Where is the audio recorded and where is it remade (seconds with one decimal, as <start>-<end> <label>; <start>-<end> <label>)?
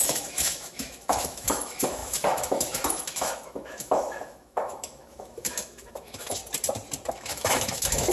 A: 0.0-6.4 remade; 6.4-7.1 recorded; 7.1-8.1 remade